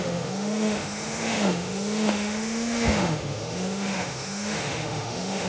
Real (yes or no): no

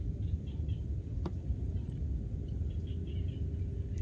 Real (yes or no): yes